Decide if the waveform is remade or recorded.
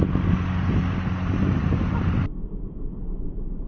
recorded